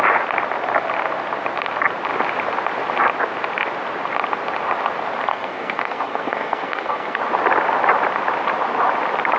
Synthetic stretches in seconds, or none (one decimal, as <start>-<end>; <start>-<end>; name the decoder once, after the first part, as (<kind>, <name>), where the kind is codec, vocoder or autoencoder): 5.3-7.2 (codec, SNAC)